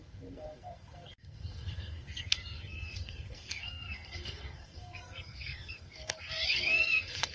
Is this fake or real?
fake